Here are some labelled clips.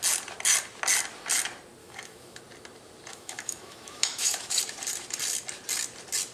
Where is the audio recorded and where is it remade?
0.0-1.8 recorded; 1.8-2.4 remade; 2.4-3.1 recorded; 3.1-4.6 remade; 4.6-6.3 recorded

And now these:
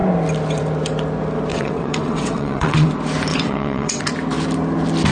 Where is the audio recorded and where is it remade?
0.0-1.5 recorded; 1.5-2.9 remade; 2.9-3.3 recorded; 3.3-4.0 remade; 4.0-5.1 recorded

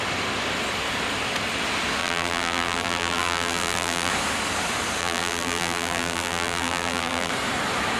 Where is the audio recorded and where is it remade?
0.0-2.0 recorded; 2.0-4.1 remade; 4.1-5.0 recorded; 5.0-7.3 remade; 7.3-8.0 recorded

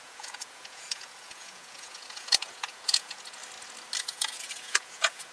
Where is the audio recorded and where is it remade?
0.0-3.4 remade; 3.4-4.0 recorded; 4.0-5.3 remade

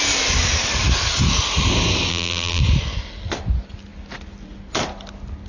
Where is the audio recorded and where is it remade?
0.0-2.1 recorded; 2.1-2.6 remade; 2.6-5.5 recorded